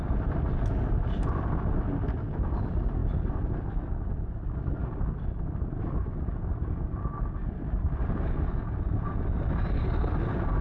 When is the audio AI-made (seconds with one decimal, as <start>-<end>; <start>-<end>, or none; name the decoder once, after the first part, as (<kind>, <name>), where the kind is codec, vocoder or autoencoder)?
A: none